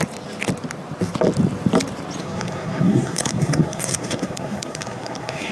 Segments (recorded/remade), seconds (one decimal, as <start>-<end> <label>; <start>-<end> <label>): 0.0-2.2 recorded; 2.2-5.5 remade